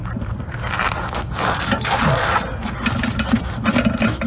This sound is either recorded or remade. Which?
recorded